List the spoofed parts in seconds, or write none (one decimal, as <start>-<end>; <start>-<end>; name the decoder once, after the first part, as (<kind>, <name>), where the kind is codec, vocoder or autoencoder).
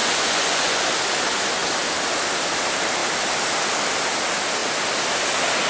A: 0.0-0.9 (vocoder, Vocos)